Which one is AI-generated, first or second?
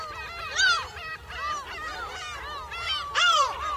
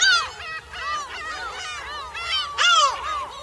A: first